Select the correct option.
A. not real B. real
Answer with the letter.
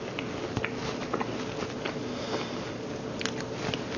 B